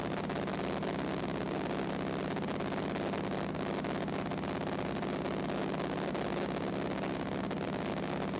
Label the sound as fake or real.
real